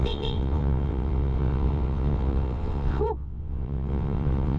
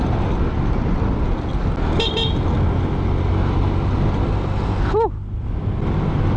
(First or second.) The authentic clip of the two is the second